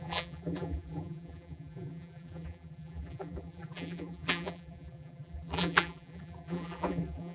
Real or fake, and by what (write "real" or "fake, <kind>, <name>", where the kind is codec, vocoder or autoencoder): fake, vocoder, BigVGAN v2